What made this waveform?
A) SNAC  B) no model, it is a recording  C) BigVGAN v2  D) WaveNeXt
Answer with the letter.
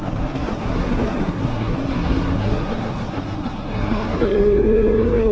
A